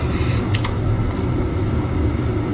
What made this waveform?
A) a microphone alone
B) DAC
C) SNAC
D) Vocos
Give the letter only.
A